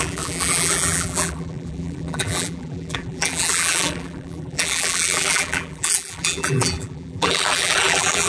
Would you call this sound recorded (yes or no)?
no